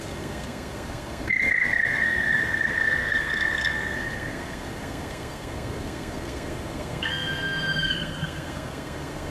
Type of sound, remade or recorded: remade